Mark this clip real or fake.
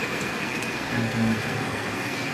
fake